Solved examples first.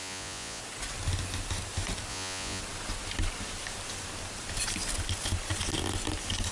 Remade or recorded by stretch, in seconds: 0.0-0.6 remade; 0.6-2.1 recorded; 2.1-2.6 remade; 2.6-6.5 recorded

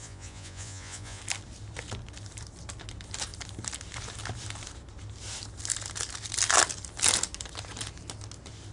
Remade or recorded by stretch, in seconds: 0.0-1.2 remade; 1.2-8.7 recorded

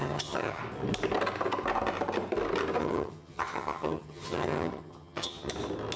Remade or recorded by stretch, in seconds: 0.0-0.6 remade; 0.6-2.8 recorded; 2.8-5.5 remade; 5.5-6.0 recorded